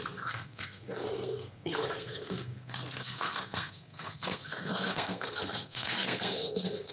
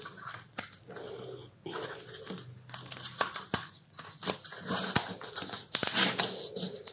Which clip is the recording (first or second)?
second